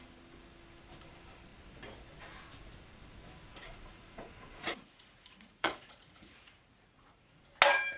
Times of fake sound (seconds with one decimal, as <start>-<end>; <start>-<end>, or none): 3.6-7.4